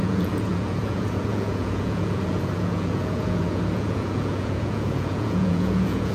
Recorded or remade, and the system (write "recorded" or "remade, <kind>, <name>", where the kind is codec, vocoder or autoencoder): remade, vocoder, Vocos